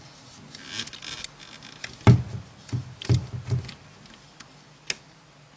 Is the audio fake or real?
real